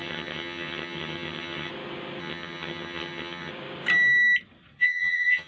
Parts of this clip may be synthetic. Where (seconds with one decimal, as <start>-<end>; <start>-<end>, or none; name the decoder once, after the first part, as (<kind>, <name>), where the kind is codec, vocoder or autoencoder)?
0.0-1.7 (vocoder, HiFi-GAN); 2.2-3.5; 4.8-5.5